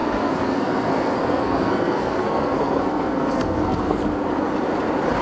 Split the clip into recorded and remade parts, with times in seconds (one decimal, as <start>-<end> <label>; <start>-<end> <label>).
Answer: 0.0-4.0 remade; 4.0-5.2 recorded